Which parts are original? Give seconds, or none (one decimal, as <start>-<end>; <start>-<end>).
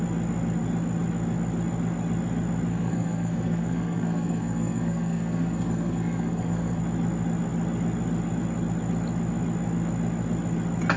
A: 0.0-2.7; 6.8-11.0